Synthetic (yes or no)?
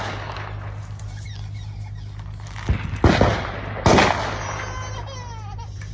no